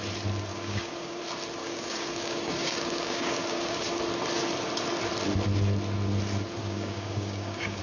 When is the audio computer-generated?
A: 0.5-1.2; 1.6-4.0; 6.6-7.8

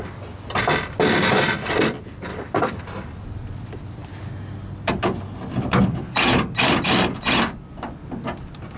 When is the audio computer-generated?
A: 2.3-2.8

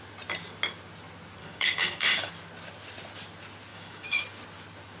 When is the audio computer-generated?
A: 1.4-2.3; 3.7-4.2

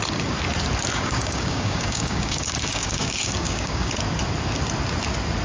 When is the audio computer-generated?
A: 0.9-3.9

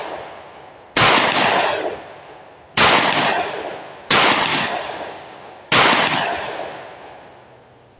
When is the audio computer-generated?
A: 4.5-5.7

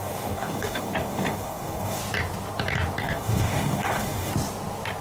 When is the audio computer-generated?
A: 0.0-2.0; 3.0-4.3

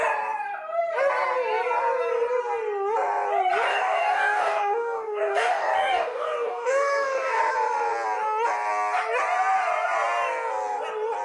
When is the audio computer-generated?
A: 3.7-7.4

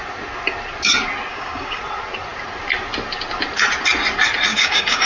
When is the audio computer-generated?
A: 1.3-1.8; 4.5-5.1